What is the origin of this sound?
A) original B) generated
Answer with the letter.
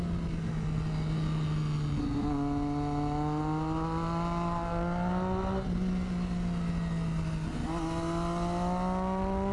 A